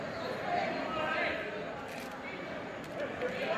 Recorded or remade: recorded